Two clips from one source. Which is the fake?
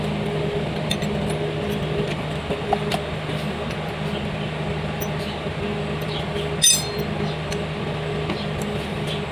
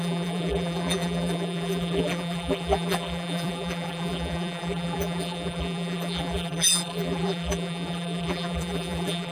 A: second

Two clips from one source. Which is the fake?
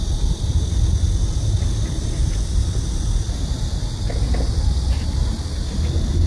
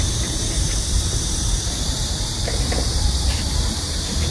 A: second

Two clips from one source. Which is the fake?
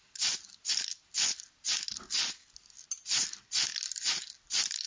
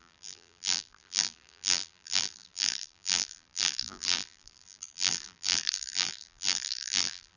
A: second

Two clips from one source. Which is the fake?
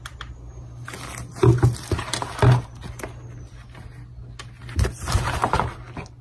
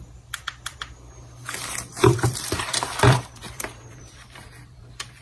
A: second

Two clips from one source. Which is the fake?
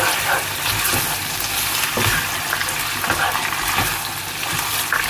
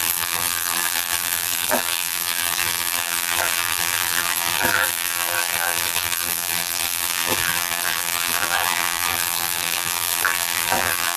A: second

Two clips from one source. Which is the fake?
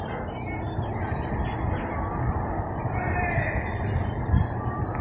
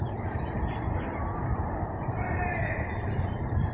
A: second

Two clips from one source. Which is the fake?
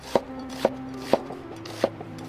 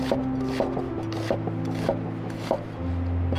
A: first